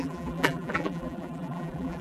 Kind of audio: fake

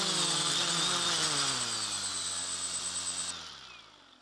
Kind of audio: real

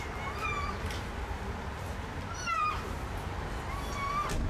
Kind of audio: real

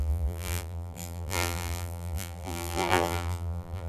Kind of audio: fake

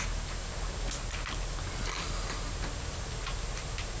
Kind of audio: real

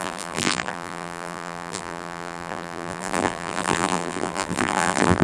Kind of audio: fake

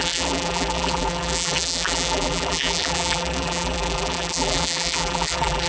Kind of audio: fake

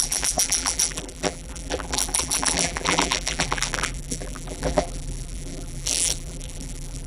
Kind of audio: fake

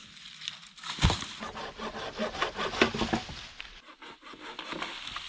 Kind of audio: real